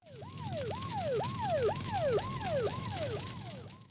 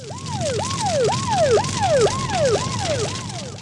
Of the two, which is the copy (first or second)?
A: first